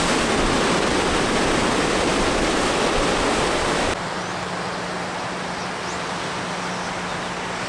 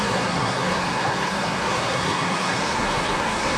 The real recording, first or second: first